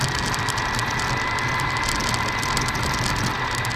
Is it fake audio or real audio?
real